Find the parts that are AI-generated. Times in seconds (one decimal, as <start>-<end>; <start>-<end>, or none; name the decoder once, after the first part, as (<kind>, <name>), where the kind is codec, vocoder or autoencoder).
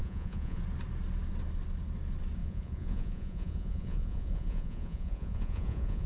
0.0-0.6 (vocoder, Vocos); 2.4-6.1